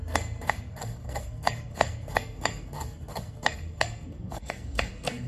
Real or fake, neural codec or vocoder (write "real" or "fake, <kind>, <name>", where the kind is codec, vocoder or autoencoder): fake, codec, SNAC